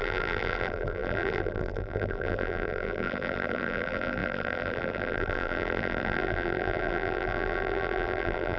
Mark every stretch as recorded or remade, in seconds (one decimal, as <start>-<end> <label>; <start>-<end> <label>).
0.0-8.6 remade